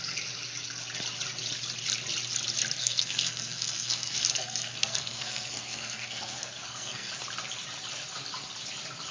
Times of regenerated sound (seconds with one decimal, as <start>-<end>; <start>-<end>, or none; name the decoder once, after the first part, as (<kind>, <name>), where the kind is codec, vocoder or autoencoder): 2.8-7.1 (codec, SNAC)